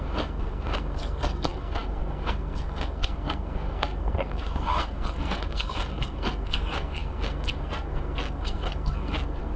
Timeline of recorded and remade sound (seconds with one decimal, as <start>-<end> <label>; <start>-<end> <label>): 0.0-9.6 remade